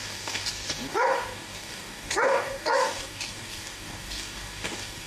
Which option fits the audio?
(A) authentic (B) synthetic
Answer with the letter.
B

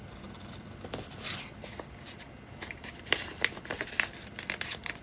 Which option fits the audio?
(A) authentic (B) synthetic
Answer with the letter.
A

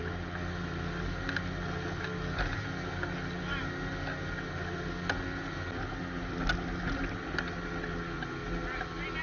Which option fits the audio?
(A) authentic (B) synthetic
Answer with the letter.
A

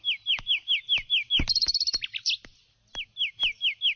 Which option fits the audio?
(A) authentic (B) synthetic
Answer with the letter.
A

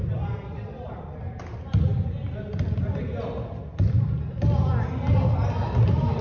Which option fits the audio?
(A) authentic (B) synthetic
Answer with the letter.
A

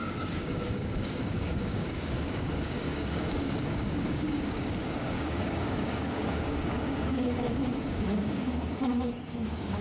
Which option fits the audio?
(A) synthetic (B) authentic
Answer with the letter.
A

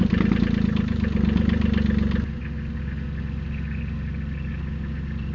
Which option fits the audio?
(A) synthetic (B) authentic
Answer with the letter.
B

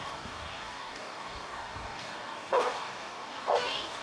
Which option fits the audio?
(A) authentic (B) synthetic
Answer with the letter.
B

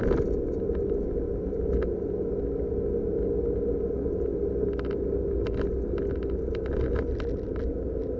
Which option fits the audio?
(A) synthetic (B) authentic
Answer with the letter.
B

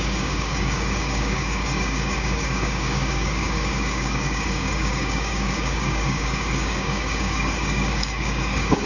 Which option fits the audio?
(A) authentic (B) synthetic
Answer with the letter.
B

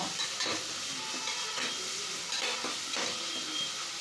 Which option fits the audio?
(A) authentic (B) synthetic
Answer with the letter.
A